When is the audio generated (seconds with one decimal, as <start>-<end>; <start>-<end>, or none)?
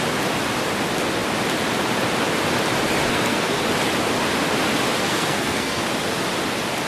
3.1-3.6; 5.0-5.8